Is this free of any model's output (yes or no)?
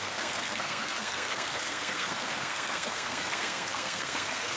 no